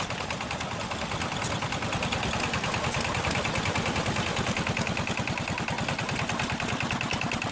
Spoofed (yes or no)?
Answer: no